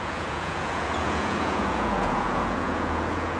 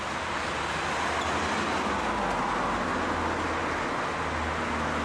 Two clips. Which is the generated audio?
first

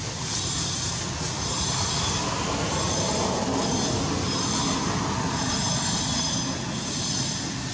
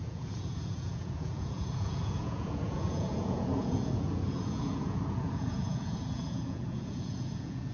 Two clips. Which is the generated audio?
second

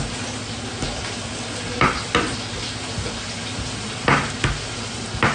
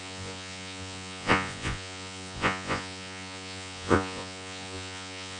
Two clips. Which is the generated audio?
second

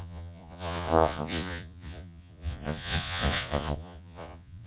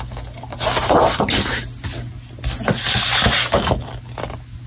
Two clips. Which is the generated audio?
first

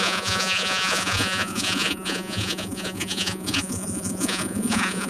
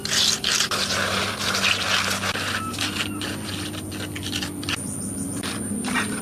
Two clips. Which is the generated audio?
first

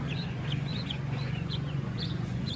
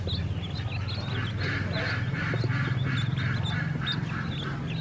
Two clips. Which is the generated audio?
first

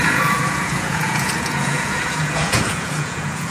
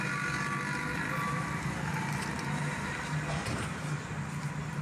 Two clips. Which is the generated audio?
first